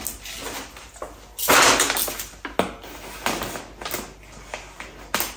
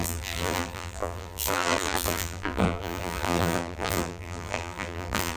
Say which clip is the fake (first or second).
second